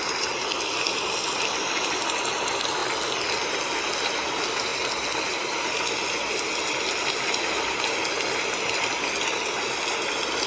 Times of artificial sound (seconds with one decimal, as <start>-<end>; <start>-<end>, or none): none